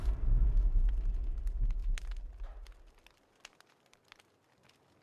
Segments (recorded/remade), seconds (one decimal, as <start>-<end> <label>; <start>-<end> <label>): 0.0-5.0 recorded